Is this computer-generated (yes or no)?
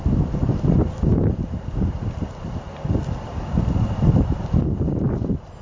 no